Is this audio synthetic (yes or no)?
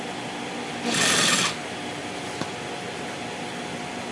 no